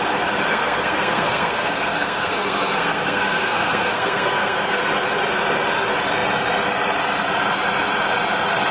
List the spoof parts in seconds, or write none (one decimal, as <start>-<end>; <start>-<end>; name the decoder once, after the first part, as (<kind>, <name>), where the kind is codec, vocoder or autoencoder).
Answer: 0.5-4.8 (codec, SNAC)